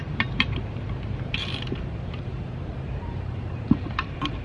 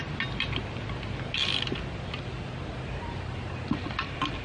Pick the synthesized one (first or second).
first